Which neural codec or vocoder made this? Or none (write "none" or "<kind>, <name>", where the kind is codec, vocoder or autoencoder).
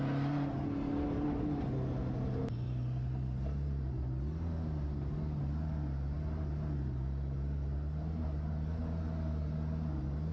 none